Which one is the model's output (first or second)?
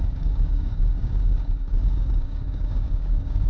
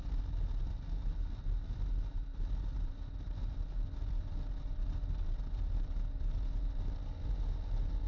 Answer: first